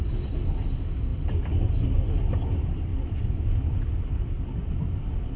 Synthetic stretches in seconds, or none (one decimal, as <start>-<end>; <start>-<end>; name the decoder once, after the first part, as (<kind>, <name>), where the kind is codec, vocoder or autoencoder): 2.9-4.9 (vocoder, BigVGAN v2)